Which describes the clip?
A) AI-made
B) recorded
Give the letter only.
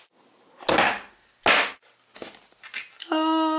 B